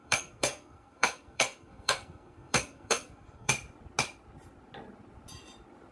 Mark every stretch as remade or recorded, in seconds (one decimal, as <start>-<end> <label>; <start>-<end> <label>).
0.0-3.5 remade; 3.5-5.9 recorded